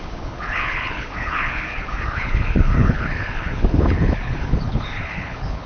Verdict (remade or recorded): remade